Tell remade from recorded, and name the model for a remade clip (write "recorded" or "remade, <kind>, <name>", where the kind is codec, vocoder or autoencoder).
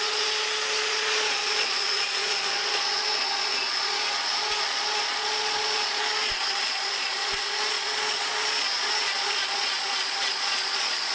remade, vocoder, Vocos